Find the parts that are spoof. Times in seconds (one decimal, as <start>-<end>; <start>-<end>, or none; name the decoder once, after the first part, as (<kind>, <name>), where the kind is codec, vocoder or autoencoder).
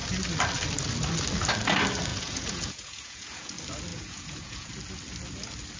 2.1-3.5 (vocoder, Vocos); 3.9-4.7